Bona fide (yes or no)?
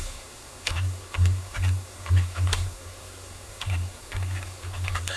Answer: no